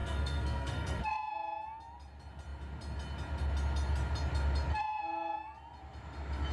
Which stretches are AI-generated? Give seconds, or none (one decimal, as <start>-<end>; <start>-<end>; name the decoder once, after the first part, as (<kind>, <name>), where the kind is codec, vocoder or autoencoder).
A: 0.0-1.0 (codec, SNAC)